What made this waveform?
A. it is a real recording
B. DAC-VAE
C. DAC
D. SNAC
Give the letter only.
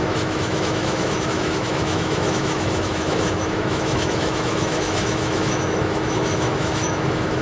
B